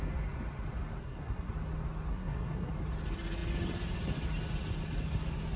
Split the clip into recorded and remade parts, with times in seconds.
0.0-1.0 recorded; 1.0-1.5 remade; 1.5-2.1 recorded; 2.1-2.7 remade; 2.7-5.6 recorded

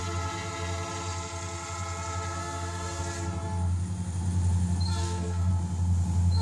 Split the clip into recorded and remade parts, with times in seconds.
0.0-2.4 recorded; 2.4-3.0 remade; 3.0-5.0 recorded; 5.0-5.5 remade; 5.5-6.4 recorded

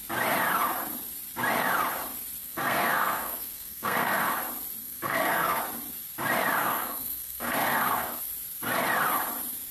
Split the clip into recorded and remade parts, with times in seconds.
0.0-2.4 recorded; 2.4-4.3 remade; 4.3-4.8 recorded; 4.8-5.6 remade; 5.6-6.6 recorded; 6.6-8.2 remade; 8.2-9.7 recorded

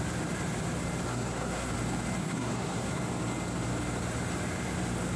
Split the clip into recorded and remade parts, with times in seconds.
0.0-1.1 recorded; 1.1-1.7 remade; 1.7-2.2 recorded; 2.2-3.0 remade; 3.0-5.2 recorded

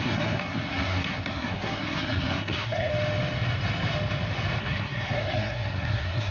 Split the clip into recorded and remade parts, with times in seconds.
0.0-2.9 remade; 2.9-4.6 recorded; 4.6-6.3 remade